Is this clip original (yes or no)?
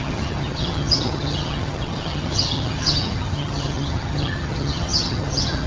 no